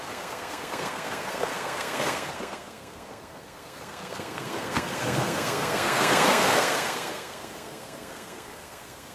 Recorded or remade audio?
remade